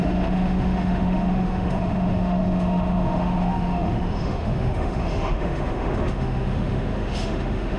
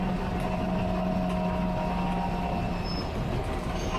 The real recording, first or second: second